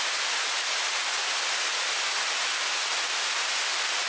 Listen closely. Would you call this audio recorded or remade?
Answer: recorded